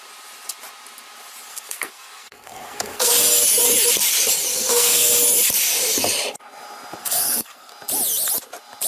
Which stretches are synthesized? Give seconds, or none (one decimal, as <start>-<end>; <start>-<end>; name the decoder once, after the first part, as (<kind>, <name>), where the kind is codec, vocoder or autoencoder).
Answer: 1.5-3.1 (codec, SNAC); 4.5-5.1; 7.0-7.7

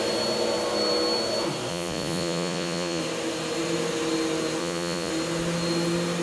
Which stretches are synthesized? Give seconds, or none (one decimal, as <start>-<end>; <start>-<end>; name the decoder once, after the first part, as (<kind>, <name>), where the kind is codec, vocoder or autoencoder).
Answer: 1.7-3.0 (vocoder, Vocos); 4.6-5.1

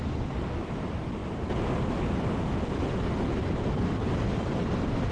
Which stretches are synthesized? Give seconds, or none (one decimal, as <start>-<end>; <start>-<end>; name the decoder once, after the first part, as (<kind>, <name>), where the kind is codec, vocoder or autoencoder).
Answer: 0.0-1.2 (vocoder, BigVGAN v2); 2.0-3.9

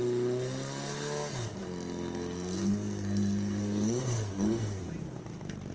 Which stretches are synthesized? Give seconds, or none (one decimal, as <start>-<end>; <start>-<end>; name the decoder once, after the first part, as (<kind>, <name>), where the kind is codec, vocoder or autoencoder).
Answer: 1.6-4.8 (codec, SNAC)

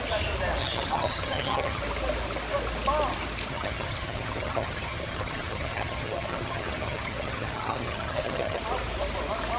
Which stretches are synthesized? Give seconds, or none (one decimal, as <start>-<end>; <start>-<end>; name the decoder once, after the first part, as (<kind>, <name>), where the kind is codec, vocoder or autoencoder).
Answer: 0.6-1.8 (vocoder, HiFi-GAN); 3.5-8.6

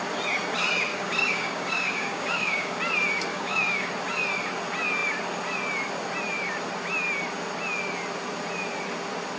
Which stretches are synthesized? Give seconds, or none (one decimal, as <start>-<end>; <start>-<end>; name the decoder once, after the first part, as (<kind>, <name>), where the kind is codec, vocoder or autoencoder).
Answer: 0.9-2.8 (codec, DAC); 3.3-3.9